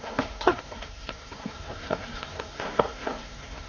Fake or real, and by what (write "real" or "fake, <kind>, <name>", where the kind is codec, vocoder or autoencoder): fake, codec, SNAC